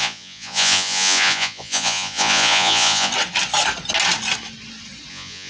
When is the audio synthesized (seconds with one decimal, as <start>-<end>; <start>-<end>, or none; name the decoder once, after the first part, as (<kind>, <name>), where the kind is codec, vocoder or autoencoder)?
0.0-3.1 (vocoder, Vocos); 5.1-5.5